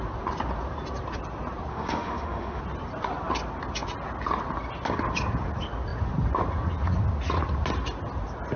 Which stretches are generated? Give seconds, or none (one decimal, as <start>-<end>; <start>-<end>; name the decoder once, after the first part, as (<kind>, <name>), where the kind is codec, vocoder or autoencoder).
1.7-2.6 (autoencoder, DAC-VAE)